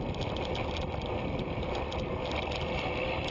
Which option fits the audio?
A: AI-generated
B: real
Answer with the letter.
B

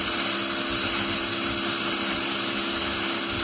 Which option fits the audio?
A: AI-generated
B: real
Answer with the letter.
B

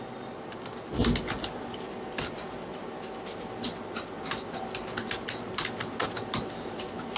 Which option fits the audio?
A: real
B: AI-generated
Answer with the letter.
A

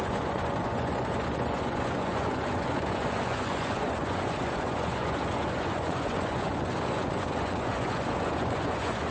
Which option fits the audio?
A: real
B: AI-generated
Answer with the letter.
B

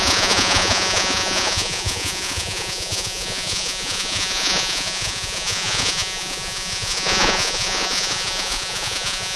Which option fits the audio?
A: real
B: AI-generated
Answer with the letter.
B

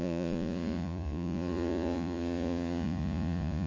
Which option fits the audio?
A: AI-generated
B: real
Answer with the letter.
A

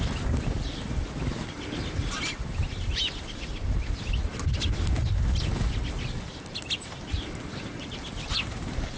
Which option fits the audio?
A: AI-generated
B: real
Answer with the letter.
B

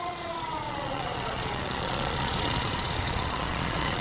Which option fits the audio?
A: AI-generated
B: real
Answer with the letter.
A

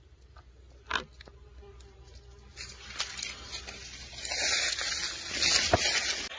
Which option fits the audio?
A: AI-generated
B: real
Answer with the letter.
B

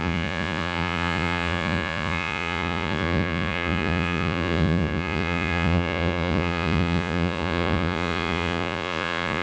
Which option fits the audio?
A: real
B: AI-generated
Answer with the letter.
B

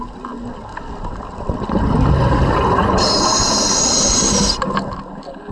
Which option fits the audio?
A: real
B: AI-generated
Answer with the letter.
A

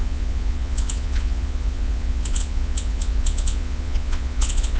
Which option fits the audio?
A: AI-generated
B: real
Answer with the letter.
A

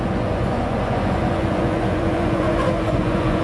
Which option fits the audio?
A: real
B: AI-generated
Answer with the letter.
B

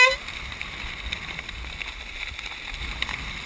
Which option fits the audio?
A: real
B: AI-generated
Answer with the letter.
A